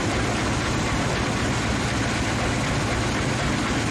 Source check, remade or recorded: recorded